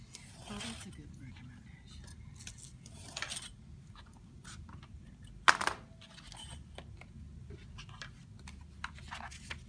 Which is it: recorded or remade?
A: recorded